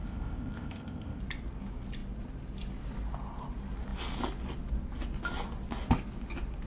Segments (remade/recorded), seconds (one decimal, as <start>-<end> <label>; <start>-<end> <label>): 0.0-1.2 remade; 1.2-6.7 recorded